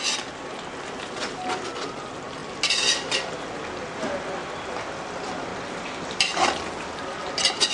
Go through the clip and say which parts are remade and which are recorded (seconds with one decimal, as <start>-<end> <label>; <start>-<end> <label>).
0.0-7.7 recorded